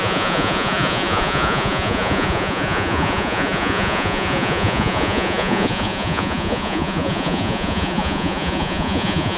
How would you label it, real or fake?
fake